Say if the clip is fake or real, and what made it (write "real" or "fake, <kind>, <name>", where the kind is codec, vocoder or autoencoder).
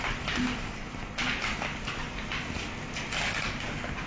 real